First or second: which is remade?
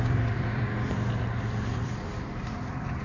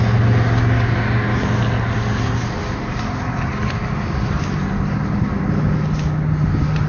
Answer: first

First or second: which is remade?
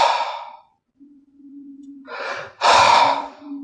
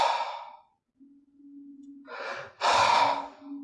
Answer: first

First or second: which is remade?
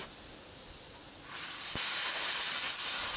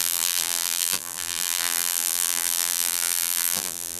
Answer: second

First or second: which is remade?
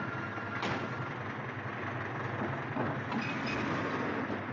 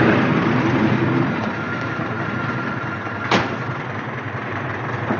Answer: second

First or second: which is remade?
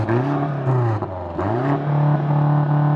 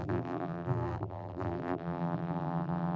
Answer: second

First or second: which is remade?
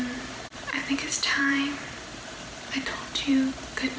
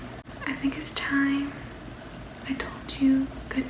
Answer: first